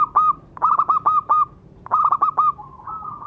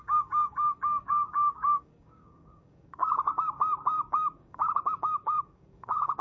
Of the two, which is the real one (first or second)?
first